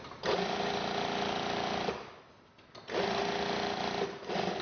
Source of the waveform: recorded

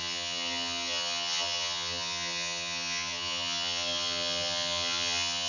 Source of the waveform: remade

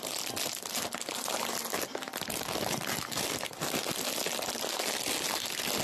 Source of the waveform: recorded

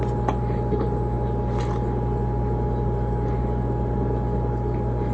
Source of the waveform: recorded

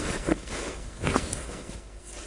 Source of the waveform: remade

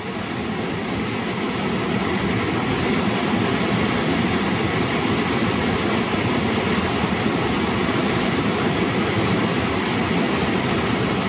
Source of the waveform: recorded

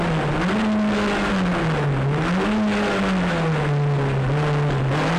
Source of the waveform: recorded